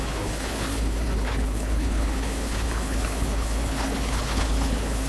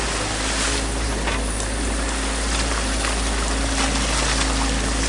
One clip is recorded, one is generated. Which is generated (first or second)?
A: first